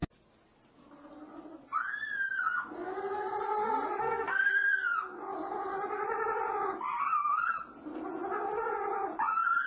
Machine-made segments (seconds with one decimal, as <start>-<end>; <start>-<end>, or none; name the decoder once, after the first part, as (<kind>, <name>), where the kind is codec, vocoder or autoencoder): 4.0-4.5 (codec, SNAC)